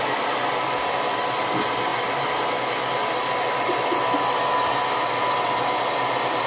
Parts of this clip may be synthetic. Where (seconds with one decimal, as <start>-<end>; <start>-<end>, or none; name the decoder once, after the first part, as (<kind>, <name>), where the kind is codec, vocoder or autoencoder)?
none

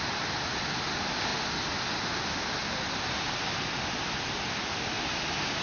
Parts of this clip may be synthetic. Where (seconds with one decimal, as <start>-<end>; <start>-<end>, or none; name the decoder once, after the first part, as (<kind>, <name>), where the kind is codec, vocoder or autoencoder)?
none